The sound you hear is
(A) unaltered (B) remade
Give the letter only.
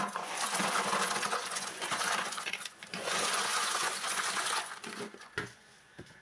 B